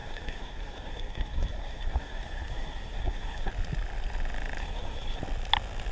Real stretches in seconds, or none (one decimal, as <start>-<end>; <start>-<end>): 3.5-4.6; 5.2-5.9